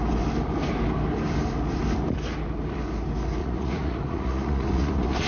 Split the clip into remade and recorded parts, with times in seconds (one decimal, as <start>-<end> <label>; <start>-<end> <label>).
0.0-3.4 recorded; 3.4-5.3 remade